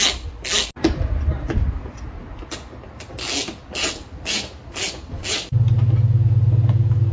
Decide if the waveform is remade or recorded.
recorded